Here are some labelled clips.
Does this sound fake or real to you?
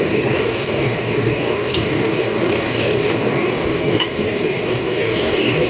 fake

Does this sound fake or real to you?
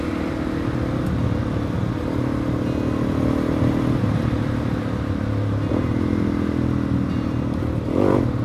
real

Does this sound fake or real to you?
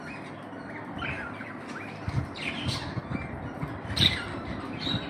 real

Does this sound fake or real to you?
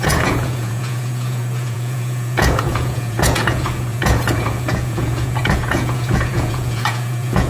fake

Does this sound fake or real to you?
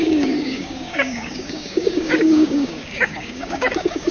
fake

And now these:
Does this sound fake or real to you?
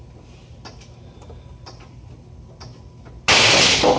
real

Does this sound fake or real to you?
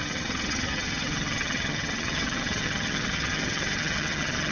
fake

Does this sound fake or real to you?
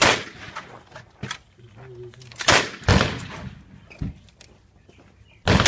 real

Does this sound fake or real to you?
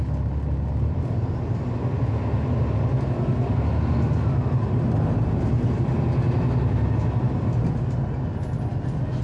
real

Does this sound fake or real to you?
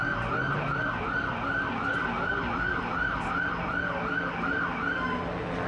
real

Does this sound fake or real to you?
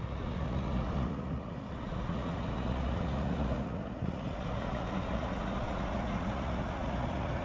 fake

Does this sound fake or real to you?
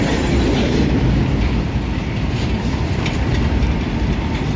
real